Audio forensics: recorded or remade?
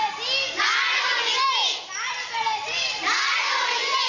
recorded